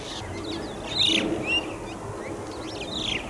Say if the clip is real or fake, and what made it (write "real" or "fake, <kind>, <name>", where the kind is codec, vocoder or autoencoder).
real